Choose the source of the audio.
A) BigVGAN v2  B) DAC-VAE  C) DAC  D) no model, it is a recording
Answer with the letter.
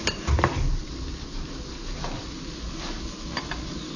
D